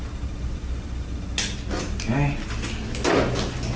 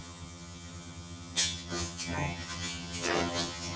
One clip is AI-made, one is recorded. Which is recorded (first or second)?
first